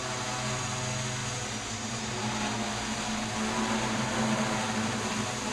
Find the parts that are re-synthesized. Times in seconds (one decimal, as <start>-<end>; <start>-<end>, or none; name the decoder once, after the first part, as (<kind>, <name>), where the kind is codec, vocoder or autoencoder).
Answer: none